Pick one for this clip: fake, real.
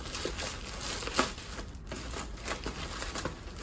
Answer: real